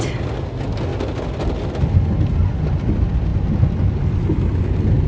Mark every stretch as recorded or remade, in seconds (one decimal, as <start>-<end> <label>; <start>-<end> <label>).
0.0-5.1 recorded